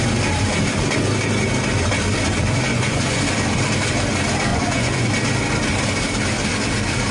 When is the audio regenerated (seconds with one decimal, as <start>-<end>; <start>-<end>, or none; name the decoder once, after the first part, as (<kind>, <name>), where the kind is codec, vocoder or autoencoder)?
2.7-3.2 (vocoder, Vocos); 4.5-5.1